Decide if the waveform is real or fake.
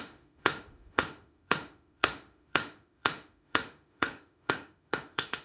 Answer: fake